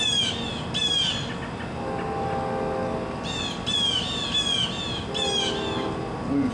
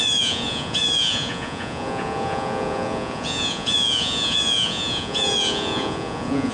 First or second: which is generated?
second